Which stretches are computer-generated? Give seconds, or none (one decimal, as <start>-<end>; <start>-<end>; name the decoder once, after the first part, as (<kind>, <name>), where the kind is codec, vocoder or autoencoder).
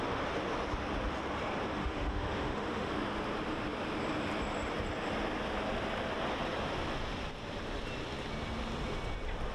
1.8-2.9 (autoencoder, DAC-VAE)